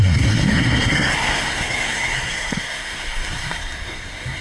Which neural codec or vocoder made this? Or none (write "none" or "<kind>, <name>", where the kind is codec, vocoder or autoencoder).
codec, SNAC